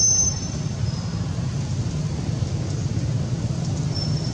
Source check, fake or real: real